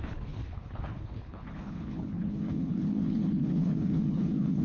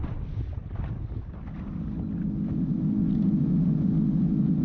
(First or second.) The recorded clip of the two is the second